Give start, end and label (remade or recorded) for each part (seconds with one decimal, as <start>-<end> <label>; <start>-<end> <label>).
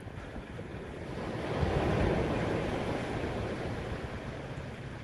0.0-5.0 recorded